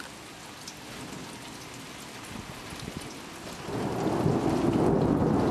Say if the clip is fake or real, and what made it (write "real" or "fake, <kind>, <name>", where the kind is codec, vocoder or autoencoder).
real